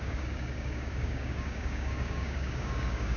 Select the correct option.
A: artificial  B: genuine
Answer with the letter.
A